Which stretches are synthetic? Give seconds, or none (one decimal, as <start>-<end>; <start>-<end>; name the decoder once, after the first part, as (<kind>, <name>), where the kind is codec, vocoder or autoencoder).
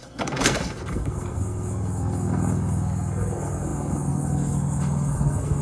0.0-5.6 (codec, SNAC)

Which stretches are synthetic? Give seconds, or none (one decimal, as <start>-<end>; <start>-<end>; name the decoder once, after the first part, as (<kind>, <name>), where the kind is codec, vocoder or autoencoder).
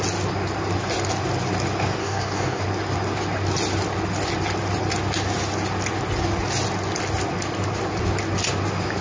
2.0-2.6 (codec, DAC)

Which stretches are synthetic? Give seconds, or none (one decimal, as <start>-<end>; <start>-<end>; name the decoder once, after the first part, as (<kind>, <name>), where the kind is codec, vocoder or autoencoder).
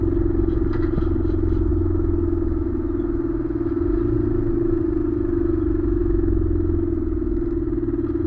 1.7-2.7 (autoencoder, DAC-VAE); 6.0-6.8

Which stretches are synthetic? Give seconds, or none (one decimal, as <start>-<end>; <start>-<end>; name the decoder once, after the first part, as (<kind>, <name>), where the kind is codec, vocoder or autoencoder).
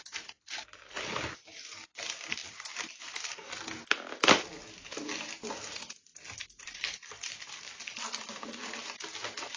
none